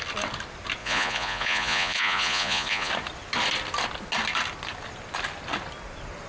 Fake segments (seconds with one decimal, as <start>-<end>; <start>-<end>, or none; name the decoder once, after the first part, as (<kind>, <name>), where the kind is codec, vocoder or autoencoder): 0.8-2.9 (vocoder, Vocos)